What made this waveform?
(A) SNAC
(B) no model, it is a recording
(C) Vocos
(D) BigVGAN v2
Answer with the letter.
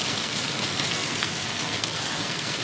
A